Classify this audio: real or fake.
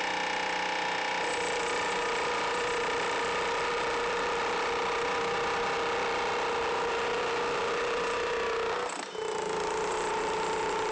real